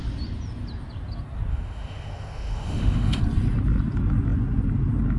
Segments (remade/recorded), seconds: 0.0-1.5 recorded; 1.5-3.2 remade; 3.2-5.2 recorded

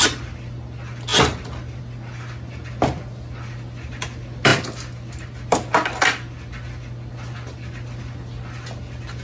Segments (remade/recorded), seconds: 0.0-9.2 recorded

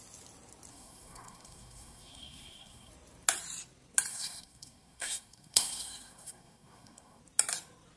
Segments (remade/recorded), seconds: 0.0-0.7 recorded; 0.7-2.9 remade; 2.9-4.1 recorded; 4.1-7.2 remade; 7.2-8.0 recorded

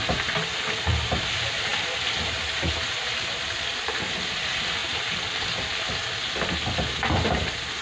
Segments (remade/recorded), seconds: 0.0-4.8 recorded; 4.8-5.6 remade; 5.6-7.8 recorded

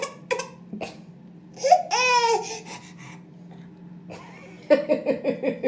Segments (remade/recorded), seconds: 0.0-5.7 recorded

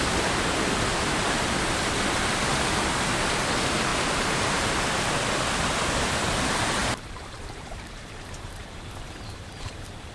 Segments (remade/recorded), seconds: 0.0-3.9 recorded; 3.9-5.1 remade; 5.1-6.8 recorded; 6.8-10.1 remade